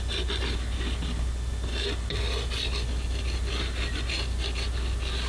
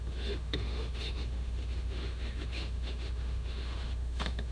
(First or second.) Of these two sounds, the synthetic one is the second